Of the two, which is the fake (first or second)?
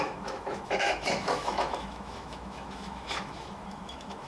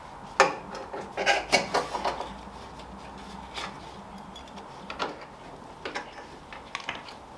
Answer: first